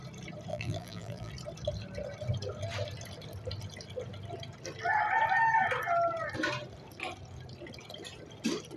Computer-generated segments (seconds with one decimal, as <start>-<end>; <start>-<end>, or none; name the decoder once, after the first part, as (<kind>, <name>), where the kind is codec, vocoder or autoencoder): 0.5-1.3 (vocoder, BigVGAN v2)

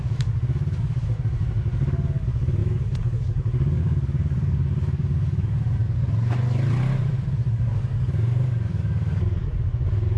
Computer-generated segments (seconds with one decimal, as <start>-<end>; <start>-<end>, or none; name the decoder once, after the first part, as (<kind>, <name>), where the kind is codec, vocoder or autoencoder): 0.0-5.8 (codec, DAC); 7.5-10.2

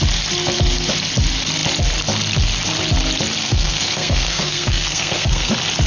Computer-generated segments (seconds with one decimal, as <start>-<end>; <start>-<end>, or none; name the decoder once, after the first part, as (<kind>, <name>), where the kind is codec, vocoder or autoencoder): 3.4-5.5 (codec, SNAC)

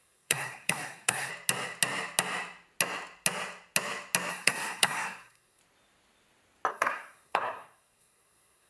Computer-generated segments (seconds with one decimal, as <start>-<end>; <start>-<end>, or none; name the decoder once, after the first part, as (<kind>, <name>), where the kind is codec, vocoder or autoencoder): 0.0-1.3 (codec, SNAC); 4.3-5.6; 6.7-8.7